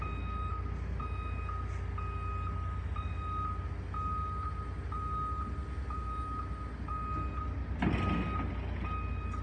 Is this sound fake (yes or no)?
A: no